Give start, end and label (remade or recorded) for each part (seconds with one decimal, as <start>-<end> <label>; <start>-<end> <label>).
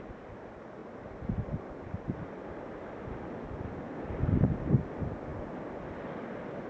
0.0-6.7 recorded